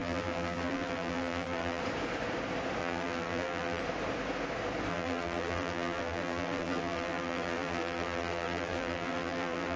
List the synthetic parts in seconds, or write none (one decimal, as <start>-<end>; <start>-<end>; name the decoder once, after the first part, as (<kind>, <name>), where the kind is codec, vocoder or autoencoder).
0.0-1.8 (vocoder, BigVGAN v2); 2.8-3.8; 4.9-9.8